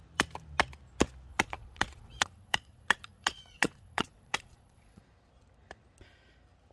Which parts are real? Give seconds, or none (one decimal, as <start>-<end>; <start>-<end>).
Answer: 0.0-1.3; 5.0-6.7